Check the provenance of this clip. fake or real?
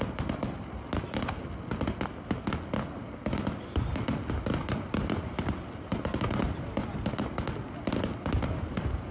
real